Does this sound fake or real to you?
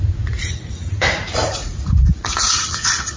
fake